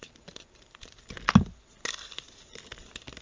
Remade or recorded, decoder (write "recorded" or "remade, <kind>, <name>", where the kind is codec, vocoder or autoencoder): recorded